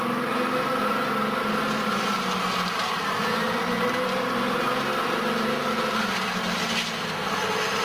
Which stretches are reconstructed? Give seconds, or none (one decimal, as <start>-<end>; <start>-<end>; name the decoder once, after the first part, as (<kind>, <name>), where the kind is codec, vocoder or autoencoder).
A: none